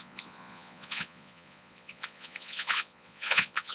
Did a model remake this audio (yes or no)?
yes